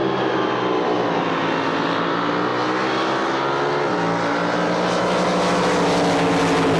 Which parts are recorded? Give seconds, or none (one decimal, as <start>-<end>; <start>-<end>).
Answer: 0.0-6.8